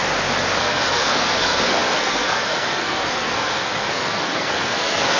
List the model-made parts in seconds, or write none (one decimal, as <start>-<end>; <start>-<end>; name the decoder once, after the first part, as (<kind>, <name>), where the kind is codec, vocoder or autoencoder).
0.6-5.2 (codec, SNAC)